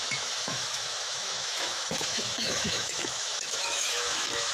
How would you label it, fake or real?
fake